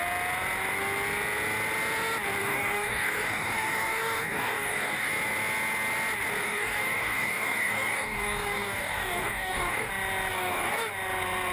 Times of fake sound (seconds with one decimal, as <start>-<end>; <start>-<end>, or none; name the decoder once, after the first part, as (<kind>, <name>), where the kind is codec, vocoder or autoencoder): 2.4-5.1 (codec, DAC); 6.4-9.9; 10.3-10.9